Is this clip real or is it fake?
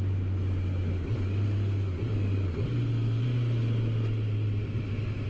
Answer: real